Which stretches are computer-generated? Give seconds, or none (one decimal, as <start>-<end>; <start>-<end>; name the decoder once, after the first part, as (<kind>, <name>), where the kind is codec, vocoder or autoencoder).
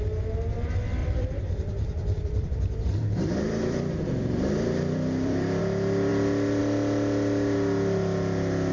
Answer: 1.0-5.6 (vocoder, BigVGAN v2)